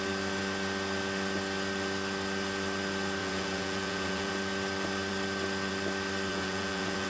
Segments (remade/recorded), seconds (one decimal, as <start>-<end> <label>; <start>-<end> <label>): 0.0-3.2 recorded; 3.2-4.3 remade; 4.3-6.3 recorded; 6.3-7.1 remade